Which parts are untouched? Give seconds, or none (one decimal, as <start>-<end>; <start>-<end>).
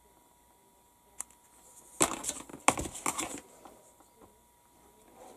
0.0-5.4